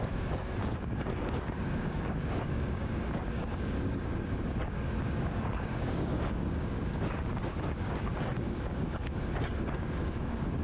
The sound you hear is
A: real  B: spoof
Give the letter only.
B